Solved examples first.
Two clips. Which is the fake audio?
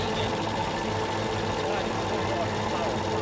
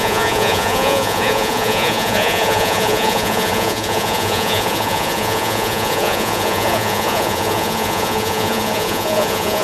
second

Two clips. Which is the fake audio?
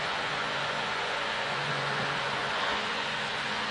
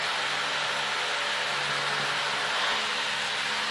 first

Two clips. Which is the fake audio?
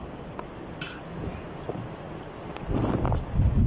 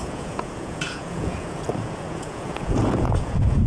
second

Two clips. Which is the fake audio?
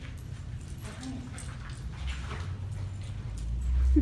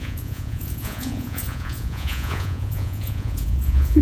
second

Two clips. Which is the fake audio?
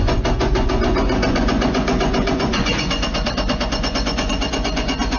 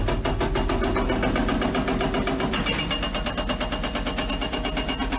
first